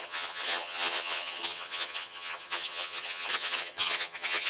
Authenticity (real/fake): fake